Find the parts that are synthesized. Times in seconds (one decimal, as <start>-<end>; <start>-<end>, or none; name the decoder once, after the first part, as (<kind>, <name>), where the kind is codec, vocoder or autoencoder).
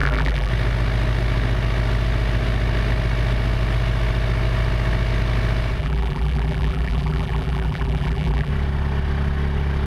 0.0-0.5 (vocoder, BigVGAN v2); 5.8-8.5